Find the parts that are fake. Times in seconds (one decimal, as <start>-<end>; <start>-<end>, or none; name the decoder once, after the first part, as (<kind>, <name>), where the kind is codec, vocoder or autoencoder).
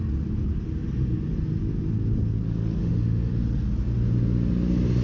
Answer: 2.8-3.3 (autoencoder, DAC-VAE)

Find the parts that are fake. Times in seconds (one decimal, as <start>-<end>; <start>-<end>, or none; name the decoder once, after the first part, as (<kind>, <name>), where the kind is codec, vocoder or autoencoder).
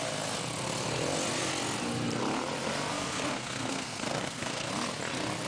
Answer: 2.9-4.7 (codec, SNAC)